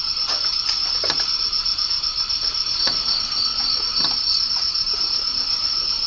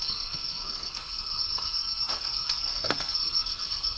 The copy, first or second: second